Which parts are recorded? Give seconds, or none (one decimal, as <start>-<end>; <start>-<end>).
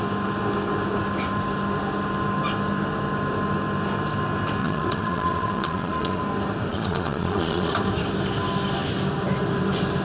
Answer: 0.0-4.6; 6.2-6.7; 7.7-10.0